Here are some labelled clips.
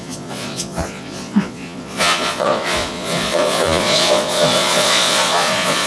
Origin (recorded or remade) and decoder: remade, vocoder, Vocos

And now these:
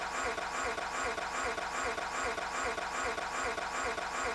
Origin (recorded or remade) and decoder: recorded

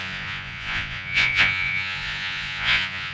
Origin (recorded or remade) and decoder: remade, vocoder, Vocos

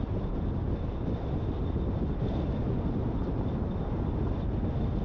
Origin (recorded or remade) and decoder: recorded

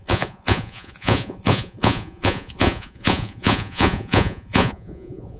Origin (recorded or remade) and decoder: remade, vocoder, Vocos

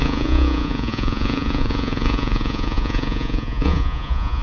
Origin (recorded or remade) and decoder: remade, vocoder, Vocos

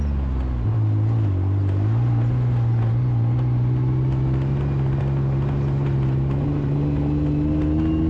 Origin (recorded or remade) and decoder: recorded